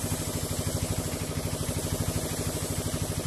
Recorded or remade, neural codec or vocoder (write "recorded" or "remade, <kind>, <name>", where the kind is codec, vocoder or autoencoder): recorded